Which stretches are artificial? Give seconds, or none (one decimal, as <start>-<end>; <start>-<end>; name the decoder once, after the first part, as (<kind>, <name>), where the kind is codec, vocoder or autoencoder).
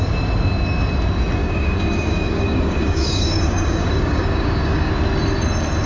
1.4-4.9 (codec, DAC)